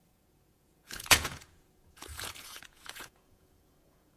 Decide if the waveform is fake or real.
fake